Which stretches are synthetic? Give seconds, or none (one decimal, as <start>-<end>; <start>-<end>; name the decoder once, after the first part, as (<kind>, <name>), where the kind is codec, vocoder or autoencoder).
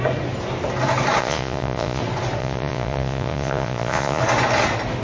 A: 1.2-2.0 (vocoder, Vocos); 2.4-4.2